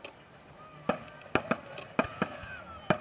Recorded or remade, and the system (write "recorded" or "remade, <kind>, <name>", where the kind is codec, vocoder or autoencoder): recorded